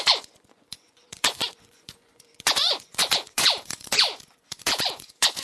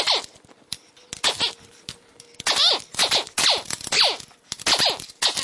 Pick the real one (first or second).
second